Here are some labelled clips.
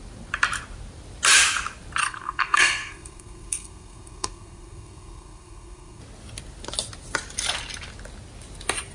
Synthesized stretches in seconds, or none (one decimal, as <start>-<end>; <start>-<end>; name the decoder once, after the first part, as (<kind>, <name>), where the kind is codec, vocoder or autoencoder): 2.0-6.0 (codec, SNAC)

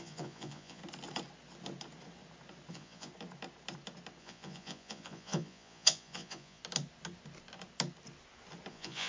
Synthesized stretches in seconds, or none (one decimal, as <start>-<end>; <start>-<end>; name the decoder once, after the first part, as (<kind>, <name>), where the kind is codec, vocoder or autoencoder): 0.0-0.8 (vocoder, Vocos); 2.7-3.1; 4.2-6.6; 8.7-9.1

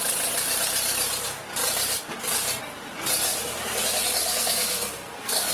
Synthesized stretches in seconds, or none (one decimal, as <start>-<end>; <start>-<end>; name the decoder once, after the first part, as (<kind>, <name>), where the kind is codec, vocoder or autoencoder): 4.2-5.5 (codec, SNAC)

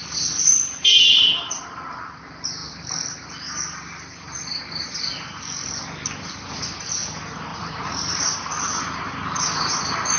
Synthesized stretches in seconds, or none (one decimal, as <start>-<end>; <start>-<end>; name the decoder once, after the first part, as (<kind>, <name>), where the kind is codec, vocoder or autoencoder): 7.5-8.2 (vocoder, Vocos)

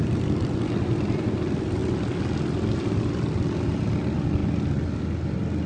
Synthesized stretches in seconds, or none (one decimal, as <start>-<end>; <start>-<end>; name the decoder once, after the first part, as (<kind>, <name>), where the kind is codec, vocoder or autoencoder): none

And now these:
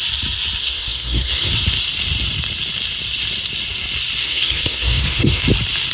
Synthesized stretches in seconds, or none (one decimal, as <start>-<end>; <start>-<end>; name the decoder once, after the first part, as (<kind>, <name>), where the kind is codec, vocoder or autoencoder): 0.6-1.5 (codec, SNAC); 4.2-5.4

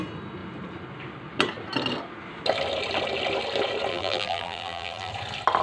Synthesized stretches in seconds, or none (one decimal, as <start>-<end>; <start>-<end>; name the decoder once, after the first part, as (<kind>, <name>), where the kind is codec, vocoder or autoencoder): 3.9-5.1 (vocoder, BigVGAN v2)